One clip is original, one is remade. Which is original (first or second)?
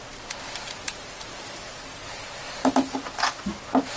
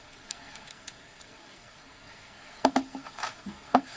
first